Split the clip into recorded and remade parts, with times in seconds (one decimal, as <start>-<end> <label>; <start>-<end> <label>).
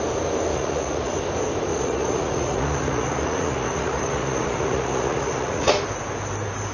0.0-0.5 recorded; 0.5-1.1 remade; 1.1-1.7 recorded; 1.7-5.7 remade; 5.7-6.7 recorded